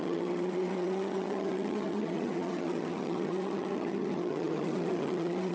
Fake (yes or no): yes